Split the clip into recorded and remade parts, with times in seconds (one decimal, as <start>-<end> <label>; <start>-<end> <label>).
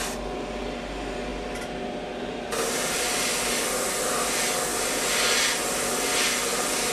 0.0-6.9 recorded